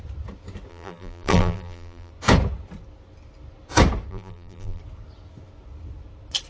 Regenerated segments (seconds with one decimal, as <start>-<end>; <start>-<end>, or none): 0.7-2.1; 4.1-4.8